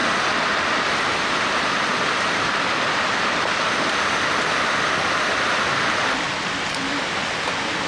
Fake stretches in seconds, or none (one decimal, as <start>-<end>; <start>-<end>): none

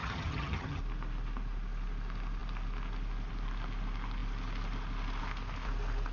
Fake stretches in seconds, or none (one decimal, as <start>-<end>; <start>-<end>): 0.0-0.8

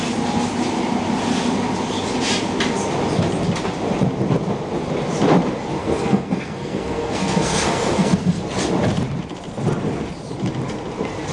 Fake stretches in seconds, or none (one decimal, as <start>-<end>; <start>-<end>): 5.8-8.4

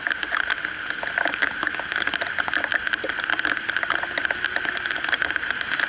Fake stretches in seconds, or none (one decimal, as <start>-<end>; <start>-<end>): 2.7-3.6